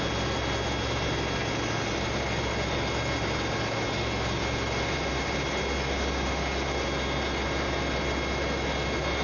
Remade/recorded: recorded